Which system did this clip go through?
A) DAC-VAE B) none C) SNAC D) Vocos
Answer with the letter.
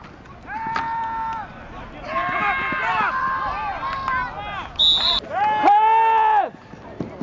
B